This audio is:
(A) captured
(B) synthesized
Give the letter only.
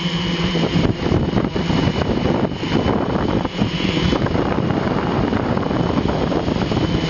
B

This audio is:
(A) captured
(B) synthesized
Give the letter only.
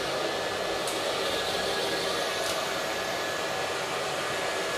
A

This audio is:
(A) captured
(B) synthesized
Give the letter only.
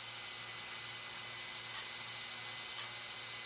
A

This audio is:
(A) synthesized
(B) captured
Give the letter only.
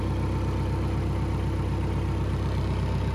B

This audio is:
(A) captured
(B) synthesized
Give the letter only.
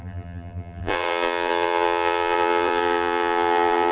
B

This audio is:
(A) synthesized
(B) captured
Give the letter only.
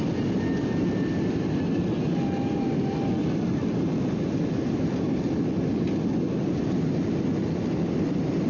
B